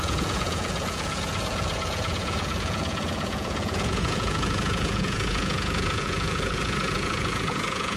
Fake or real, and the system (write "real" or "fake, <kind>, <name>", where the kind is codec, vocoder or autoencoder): fake, vocoder, Vocos